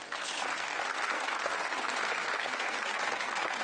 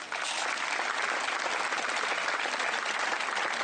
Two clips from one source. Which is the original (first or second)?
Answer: second